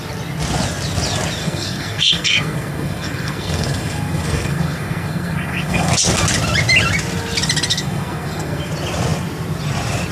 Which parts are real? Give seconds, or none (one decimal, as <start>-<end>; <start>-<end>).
0.0-1.4; 5.9-7.7; 8.7-10.1